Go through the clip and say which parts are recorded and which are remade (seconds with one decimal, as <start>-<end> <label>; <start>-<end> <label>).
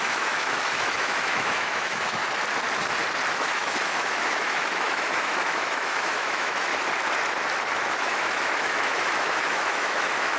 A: 0.0-2.2 remade; 2.2-3.3 recorded; 3.3-6.7 remade; 6.7-7.7 recorded; 7.7-10.4 remade